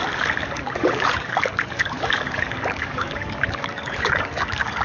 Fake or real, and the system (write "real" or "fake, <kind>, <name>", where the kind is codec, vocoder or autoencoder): fake, codec, DAC